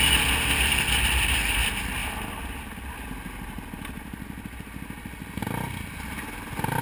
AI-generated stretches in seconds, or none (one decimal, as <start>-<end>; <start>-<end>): none